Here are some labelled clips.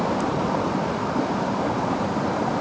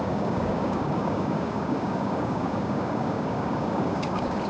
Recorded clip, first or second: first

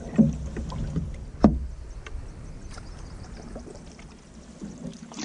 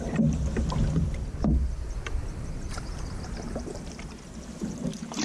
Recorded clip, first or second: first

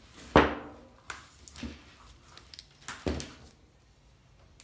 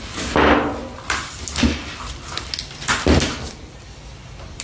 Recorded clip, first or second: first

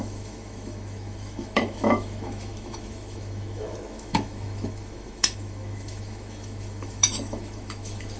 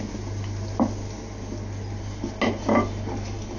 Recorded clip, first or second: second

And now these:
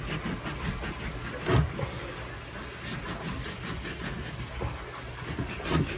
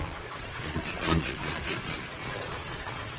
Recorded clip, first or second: first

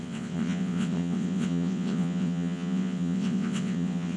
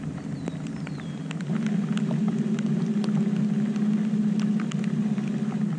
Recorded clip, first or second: second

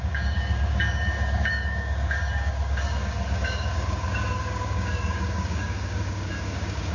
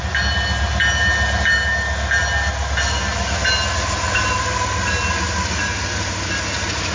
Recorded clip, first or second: second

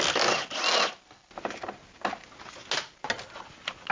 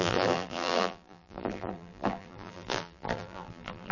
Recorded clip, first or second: first